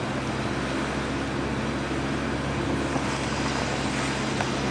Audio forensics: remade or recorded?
recorded